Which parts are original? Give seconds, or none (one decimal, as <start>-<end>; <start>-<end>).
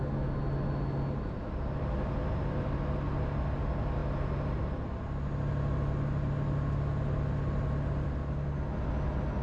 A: 0.0-9.4